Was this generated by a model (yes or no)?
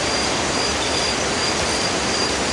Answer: yes